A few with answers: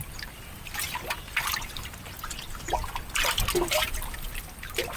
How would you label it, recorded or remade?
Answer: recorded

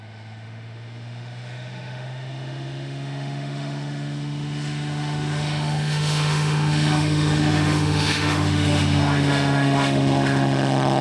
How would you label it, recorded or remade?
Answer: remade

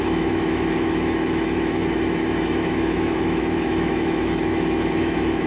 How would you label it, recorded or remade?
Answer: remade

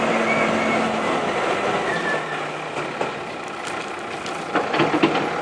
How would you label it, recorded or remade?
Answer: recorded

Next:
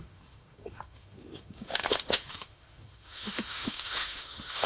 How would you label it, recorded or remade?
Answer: remade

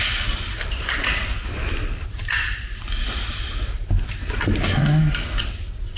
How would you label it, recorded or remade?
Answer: recorded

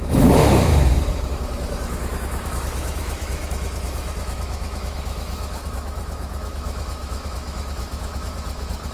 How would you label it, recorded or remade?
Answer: remade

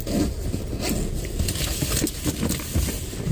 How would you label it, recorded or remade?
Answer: recorded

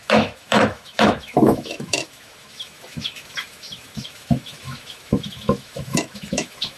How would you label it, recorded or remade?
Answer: remade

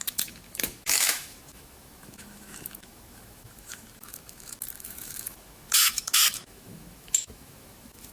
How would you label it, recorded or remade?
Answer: remade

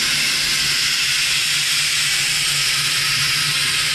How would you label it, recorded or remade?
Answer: recorded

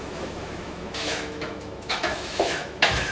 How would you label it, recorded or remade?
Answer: remade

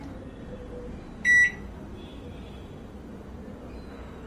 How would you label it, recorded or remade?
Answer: recorded